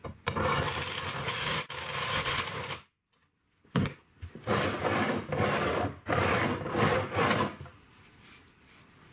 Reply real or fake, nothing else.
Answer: fake